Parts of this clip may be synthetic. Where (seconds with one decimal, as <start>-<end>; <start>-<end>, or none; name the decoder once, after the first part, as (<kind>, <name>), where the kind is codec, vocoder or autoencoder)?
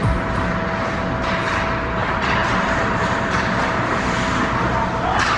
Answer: 2.0-3.8 (vocoder, BigVGAN v2)